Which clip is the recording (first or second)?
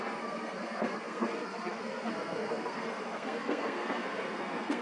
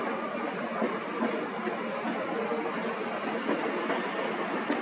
second